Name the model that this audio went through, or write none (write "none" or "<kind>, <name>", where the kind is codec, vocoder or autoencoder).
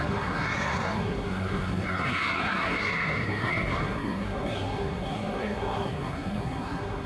codec, SNAC